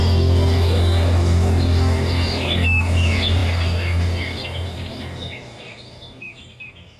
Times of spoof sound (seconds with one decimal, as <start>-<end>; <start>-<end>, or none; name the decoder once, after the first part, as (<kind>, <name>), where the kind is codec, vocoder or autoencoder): 0.0-7.0 (codec, DAC)